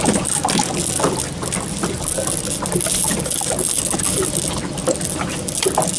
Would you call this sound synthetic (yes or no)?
no